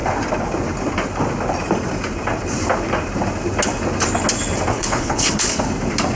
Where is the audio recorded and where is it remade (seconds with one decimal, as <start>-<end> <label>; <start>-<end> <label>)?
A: 0.0-4.7 recorded; 4.7-5.6 remade; 5.6-6.1 recorded